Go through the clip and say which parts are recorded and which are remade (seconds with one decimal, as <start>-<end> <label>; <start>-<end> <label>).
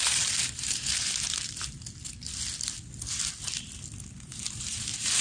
0.0-1.0 remade; 1.0-4.1 recorded; 4.1-5.2 remade